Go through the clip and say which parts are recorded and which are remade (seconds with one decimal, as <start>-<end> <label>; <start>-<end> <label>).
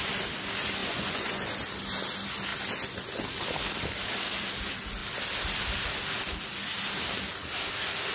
0.0-0.8 recorded; 0.8-1.5 remade; 1.5-8.1 recorded